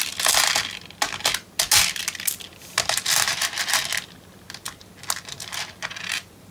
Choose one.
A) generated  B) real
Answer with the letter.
B